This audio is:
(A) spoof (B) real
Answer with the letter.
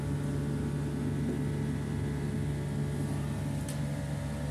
B